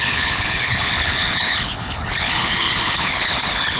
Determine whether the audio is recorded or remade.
remade